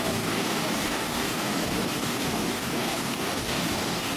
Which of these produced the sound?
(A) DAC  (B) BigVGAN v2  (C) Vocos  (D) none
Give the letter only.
A